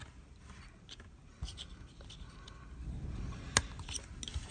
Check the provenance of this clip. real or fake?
real